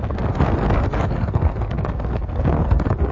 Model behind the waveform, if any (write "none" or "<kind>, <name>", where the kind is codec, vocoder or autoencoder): codec, SNAC